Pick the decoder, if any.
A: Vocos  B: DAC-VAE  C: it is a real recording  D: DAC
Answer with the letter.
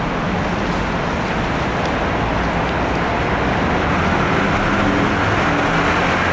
C